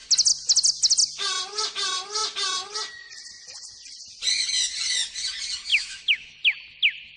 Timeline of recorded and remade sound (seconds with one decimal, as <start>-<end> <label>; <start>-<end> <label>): 0.0-5.7 recorded; 5.7-6.4 remade; 6.4-7.2 recorded